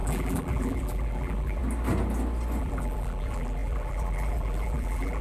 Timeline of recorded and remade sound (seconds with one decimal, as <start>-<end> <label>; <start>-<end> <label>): 0.0-1.6 remade; 1.6-2.6 recorded; 2.6-5.2 remade